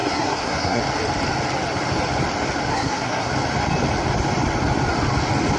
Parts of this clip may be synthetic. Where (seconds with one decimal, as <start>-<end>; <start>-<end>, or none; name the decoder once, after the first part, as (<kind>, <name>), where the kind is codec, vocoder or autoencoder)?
0.0-0.8 (codec, SNAC); 2.7-3.3